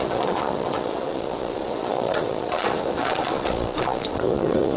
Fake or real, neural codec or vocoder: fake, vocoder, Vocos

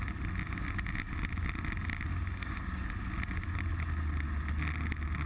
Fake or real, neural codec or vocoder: real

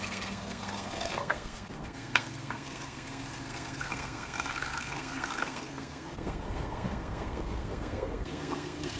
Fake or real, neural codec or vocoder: fake, codec, SNAC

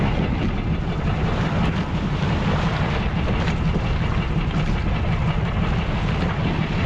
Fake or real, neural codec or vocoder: real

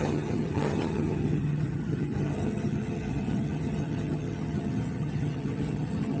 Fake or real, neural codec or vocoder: fake, vocoder, HiFi-GAN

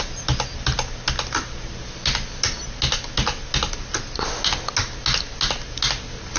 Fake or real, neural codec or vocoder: real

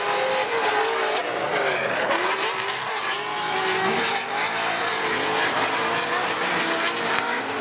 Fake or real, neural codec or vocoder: real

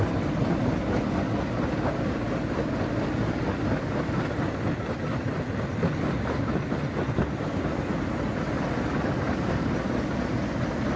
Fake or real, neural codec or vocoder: real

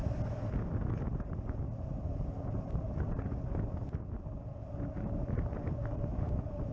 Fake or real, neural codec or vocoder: real